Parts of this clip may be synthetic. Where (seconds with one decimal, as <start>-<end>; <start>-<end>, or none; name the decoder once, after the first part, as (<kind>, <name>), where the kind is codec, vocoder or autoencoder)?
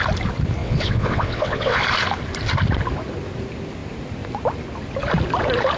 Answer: 0.6-1.8 (vocoder, WaveNeXt)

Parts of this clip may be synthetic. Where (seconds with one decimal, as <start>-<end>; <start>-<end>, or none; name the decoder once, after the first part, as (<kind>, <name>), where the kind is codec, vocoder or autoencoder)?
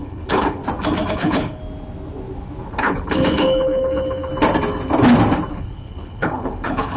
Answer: 0.0-0.6 (codec, HILCodec); 1.1-1.6; 2.8-4.3; 5.5-7.0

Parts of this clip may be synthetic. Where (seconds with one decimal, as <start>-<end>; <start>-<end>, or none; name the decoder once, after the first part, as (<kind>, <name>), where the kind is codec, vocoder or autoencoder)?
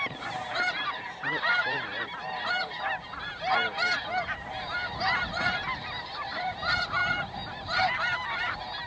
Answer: 0.0-2.6 (vocoder, BigVGAN v2); 5.0-8.9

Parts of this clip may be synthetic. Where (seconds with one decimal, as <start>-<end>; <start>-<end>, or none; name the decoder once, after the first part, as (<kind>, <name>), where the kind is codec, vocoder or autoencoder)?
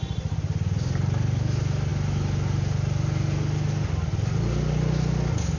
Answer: none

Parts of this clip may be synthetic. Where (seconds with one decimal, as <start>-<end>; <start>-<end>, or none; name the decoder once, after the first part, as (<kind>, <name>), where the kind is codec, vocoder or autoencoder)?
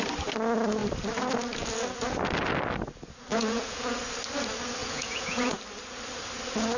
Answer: 3.3-4.0 (vocoder, Vocos); 4.8-5.6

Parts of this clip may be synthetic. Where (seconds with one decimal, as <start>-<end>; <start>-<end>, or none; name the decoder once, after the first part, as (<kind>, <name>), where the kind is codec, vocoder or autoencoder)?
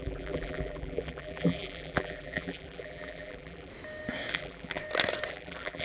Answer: 0.0-3.7 (vocoder, BigVGAN v2); 4.3-4.8; 5.3-5.8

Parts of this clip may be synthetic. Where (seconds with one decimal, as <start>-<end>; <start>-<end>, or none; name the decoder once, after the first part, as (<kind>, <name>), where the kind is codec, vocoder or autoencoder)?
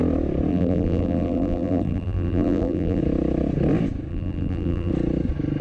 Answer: 0.5-3.0 (vocoder, BigVGAN v2); 4.1-4.9